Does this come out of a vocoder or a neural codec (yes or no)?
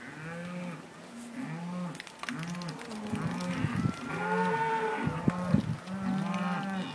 no